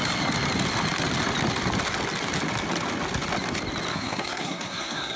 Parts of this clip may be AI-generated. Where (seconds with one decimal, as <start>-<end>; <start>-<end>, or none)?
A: 3.9-5.2